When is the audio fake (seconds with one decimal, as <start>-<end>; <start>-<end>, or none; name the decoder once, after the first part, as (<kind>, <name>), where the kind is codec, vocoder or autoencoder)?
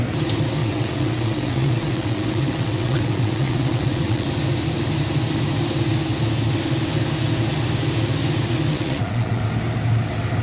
0.6-4.3 (vocoder, WaveNeXt); 8.7-9.4